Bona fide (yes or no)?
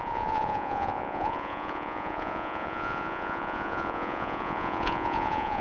no